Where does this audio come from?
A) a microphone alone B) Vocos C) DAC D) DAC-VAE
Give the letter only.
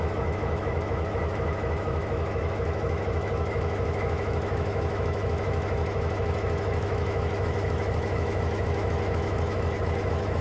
D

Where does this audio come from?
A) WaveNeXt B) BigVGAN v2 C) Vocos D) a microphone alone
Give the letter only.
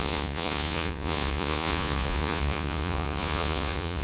C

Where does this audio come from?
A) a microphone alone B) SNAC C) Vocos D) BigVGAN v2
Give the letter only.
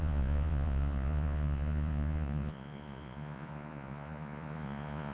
C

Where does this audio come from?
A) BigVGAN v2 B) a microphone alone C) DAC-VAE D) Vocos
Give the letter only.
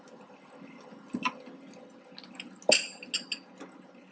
B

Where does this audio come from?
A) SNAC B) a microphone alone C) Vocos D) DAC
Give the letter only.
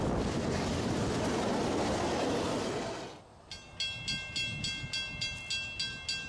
B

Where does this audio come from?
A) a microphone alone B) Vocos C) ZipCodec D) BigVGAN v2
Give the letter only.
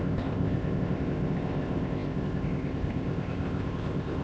C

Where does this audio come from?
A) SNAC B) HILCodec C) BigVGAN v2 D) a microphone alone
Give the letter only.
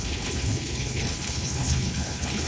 B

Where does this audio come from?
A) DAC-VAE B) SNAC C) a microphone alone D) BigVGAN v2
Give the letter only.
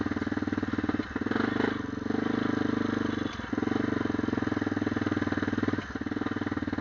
C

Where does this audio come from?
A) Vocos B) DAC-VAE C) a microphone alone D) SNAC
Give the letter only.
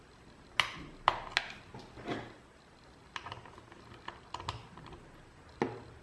C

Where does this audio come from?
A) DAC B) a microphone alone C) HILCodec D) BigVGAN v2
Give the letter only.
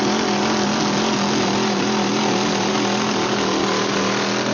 B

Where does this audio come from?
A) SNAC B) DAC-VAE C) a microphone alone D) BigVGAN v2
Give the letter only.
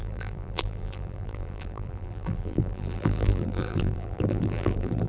D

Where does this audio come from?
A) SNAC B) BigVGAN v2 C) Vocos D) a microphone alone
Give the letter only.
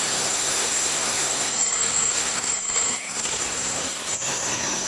A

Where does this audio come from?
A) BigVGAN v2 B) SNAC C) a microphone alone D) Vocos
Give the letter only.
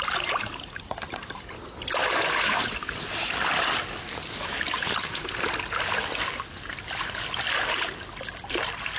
C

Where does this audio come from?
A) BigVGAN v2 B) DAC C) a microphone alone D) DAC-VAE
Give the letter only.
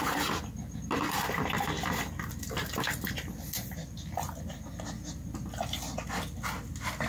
C